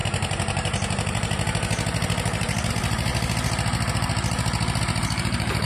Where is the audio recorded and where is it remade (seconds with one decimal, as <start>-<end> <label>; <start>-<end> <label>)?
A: 0.0-3.1 remade; 3.1-4.8 recorded; 4.8-5.7 remade